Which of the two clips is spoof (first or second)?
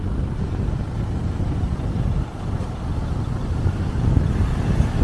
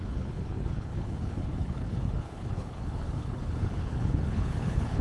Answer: second